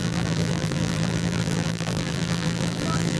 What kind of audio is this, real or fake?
fake